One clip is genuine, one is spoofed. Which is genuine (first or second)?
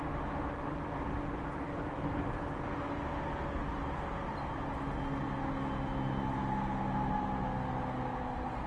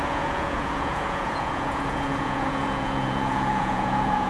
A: first